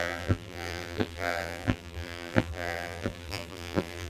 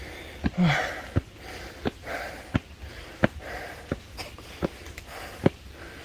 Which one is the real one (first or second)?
second